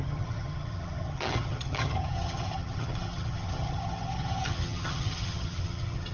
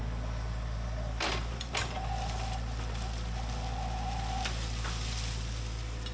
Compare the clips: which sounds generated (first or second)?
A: first